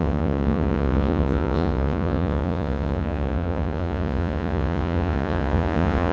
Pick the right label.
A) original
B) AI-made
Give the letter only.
B